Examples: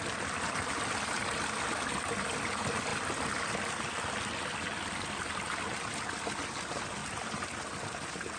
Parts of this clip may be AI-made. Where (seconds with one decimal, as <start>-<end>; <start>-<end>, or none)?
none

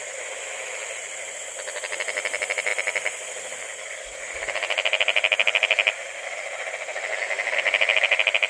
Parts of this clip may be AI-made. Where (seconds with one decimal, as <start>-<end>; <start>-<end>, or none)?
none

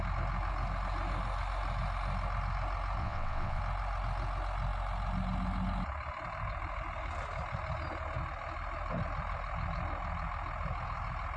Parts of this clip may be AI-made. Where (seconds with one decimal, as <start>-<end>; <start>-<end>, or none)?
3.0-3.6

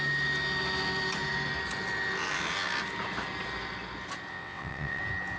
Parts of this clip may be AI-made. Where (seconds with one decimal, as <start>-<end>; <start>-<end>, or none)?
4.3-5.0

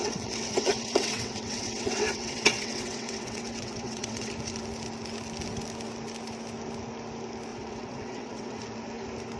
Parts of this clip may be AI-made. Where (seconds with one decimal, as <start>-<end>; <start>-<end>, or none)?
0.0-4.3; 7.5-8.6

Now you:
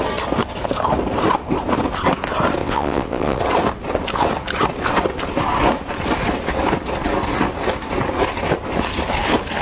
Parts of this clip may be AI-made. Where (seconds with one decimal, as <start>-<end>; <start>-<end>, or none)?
2.6-3.4

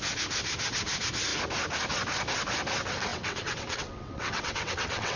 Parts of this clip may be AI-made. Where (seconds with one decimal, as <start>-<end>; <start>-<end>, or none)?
3.1-5.2